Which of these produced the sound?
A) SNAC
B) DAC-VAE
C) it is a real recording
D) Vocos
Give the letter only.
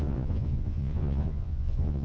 D